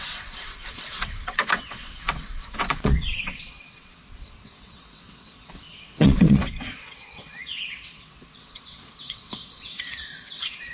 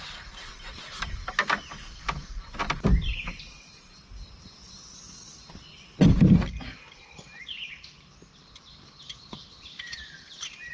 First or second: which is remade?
first